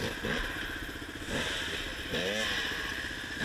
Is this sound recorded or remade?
recorded